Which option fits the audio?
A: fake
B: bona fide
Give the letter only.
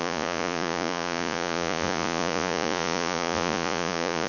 A